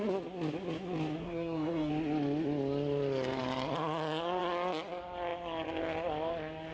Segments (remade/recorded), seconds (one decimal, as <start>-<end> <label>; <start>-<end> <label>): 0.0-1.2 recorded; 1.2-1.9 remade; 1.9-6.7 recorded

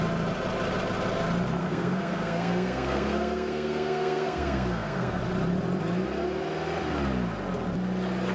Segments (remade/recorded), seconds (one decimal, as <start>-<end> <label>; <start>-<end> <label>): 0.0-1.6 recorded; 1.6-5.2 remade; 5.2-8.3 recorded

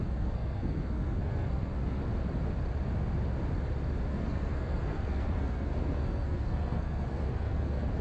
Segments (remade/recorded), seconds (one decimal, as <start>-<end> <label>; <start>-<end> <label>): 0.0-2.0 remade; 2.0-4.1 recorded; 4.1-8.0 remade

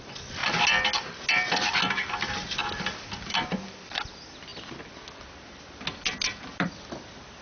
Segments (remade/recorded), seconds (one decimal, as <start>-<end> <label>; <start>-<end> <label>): 0.0-7.4 recorded

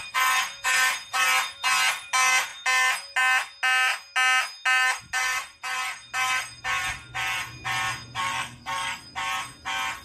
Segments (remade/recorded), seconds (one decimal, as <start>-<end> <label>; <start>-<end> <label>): 0.0-8.2 recorded; 8.2-9.0 remade; 9.0-10.0 recorded

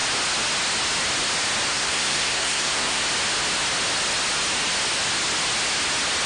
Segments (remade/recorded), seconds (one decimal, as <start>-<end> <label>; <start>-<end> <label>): 0.0-1.7 recorded; 1.7-3.0 remade; 3.0-6.3 recorded

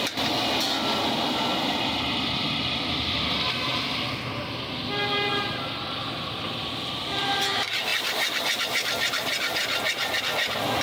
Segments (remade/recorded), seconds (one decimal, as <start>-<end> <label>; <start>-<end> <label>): 0.0-10.8 recorded